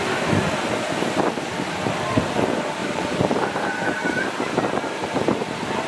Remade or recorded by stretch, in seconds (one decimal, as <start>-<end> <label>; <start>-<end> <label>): 0.0-2.8 recorded; 2.8-5.3 remade; 5.3-5.9 recorded